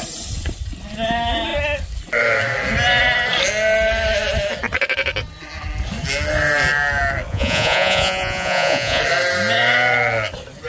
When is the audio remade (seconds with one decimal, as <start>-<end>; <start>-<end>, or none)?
7.3-9.0